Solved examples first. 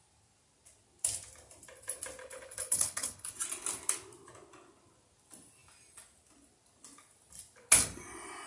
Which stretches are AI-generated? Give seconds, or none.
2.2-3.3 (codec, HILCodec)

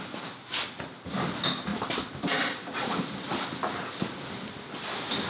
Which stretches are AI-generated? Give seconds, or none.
none

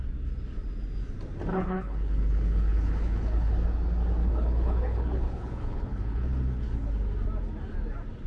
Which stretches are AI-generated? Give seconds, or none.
1.5-3.5 (codec, HILCodec); 4.2-6.9

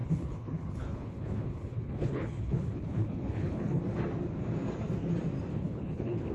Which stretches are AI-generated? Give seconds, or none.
0.0-3.8 (codec, HILCodec); 5.5-6.3

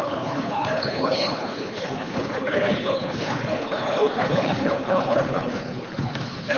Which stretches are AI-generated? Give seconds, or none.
0.0-6.6 (codec, HILCodec)

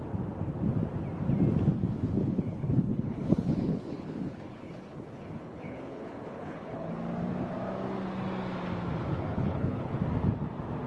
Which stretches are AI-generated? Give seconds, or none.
2.2-6.9 (codec, HILCodec); 9.1-10.0

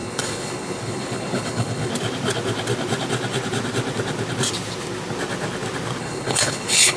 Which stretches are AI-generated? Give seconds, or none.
0.0-1.9 (codec, HILCodec); 6.0-7.0